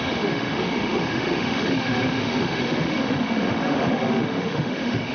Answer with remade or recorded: remade